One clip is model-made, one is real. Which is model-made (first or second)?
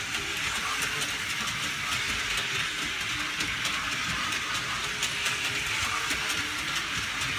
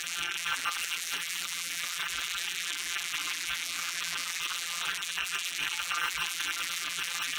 second